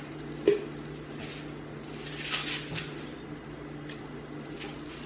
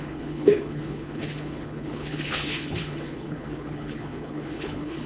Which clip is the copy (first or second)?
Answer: second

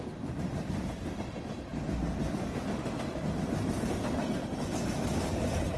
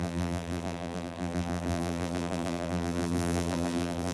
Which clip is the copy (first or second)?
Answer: second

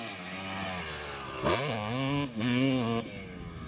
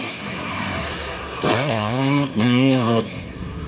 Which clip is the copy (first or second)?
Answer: second